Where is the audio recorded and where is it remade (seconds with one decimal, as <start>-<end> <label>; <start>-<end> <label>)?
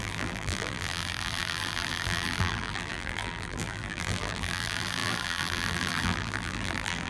0.0-7.1 remade